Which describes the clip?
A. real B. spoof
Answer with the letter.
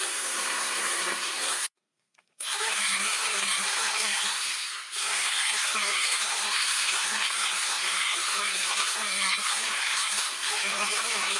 B